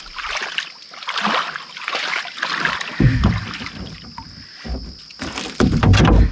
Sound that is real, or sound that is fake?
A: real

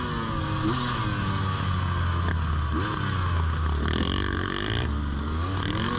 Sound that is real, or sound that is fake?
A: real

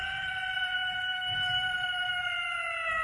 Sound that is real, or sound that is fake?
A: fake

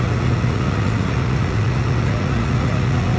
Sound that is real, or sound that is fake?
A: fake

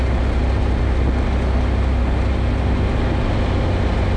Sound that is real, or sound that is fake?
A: real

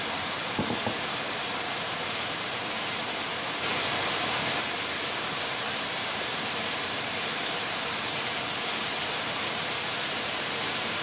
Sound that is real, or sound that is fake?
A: fake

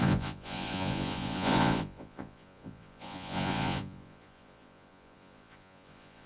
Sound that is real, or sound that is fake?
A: fake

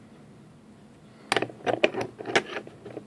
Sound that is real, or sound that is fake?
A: real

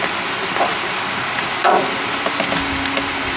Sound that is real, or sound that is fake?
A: real